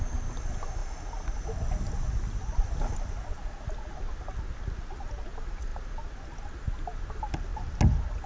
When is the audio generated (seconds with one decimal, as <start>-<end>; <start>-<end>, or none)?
none